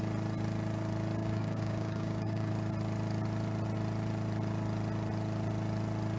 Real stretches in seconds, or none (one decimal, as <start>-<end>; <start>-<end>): 0.0-1.2; 2.5-6.2